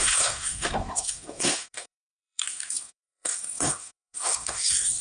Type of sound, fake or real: fake